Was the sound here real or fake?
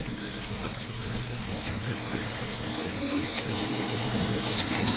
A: fake